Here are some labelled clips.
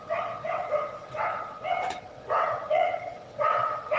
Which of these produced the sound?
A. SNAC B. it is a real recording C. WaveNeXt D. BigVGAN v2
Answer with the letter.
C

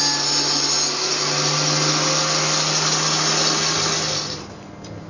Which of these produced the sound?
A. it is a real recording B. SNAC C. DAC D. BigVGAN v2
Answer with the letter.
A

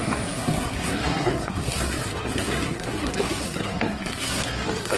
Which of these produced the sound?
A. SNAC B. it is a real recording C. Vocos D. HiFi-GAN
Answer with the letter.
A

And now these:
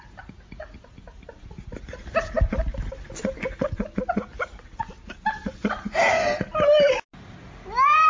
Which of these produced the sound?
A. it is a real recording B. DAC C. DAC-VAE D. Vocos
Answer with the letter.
A